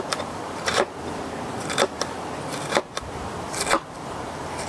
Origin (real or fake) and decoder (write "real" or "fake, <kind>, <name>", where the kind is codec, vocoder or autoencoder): fake, vocoder, BigVGAN v2